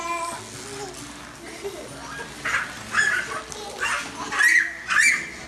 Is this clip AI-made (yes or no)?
no